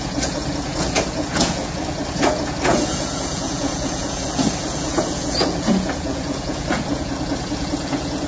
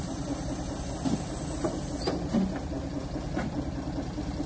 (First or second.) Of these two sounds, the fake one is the first